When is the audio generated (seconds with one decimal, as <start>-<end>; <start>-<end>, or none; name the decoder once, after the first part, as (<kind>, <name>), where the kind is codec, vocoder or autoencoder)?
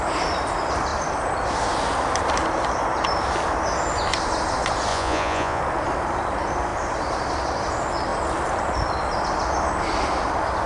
4.9-5.6 (vocoder, Vocos)